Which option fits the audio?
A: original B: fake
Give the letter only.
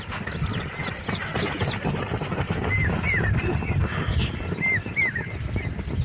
A